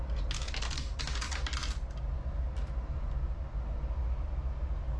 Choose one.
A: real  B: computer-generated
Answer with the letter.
A